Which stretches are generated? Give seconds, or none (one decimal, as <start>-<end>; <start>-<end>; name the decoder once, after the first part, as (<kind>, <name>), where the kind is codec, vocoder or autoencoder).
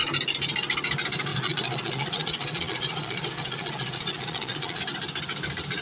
1.3-4.8 (vocoder, Vocos)